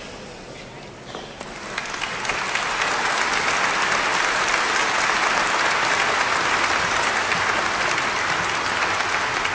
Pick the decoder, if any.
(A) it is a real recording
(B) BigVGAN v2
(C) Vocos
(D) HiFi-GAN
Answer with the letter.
A